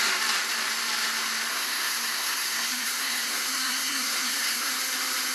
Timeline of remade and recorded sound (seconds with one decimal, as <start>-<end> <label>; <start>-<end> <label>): 0.0-1.5 recorded; 1.5-4.7 remade; 4.7-5.3 recorded